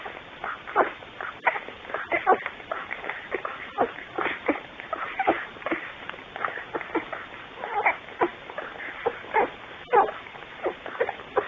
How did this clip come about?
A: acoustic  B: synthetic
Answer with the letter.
A